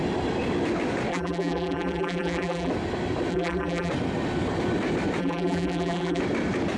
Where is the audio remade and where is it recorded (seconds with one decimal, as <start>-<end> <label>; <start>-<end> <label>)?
0.0-1.1 recorded; 1.1-2.7 remade; 2.7-3.3 recorded; 3.3-3.9 remade; 3.9-5.2 recorded; 5.2-6.2 remade; 6.2-6.8 recorded